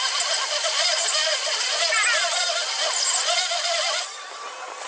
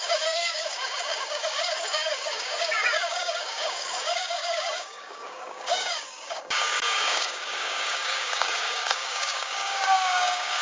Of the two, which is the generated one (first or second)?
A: second